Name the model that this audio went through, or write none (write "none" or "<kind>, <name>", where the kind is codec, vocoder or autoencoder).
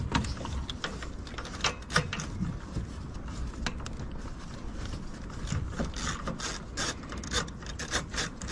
none